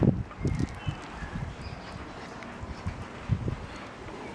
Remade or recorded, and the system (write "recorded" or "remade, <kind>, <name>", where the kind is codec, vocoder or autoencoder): recorded